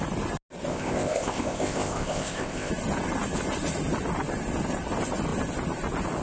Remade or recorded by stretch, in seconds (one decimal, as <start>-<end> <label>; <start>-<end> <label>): 0.0-0.7 recorded; 0.7-2.7 remade; 2.7-6.2 recorded